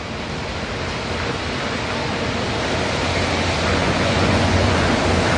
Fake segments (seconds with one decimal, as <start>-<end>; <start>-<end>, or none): 3.8-4.9